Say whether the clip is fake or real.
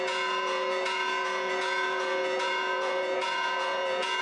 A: fake